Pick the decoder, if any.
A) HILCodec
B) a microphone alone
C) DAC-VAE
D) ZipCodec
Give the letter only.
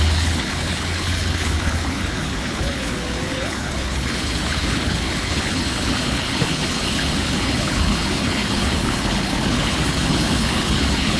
A